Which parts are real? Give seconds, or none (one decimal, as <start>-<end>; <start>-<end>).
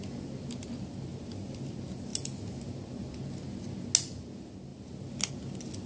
0.0-5.9